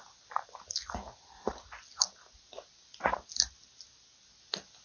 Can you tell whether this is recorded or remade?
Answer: recorded